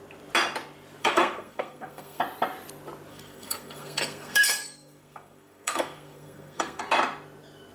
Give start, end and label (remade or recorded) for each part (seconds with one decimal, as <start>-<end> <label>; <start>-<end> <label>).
0.0-1.0 recorded; 1.0-2.2 remade; 2.2-3.1 recorded; 3.1-6.8 remade; 6.8-7.7 recorded